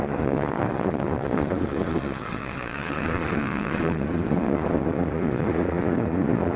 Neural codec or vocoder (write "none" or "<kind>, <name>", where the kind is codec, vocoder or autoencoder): vocoder, Vocos